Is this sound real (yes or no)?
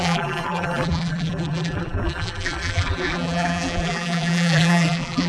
no